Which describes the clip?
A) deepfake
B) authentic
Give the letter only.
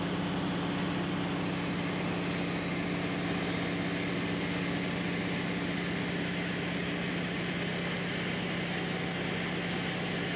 B